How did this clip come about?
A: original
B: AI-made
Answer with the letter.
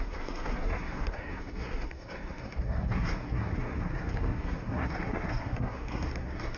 B